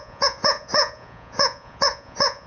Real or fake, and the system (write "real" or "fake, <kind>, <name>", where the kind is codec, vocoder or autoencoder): fake, vocoder, Vocos